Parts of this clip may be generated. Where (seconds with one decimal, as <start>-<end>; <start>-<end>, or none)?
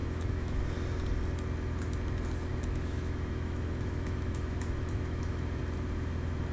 0.0-0.6; 2.5-5.6